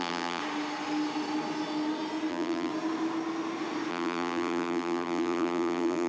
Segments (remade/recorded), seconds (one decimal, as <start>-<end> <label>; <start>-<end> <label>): 0.0-0.4 remade; 0.4-2.3 recorded; 2.3-2.7 remade; 2.7-3.9 recorded; 3.9-6.1 remade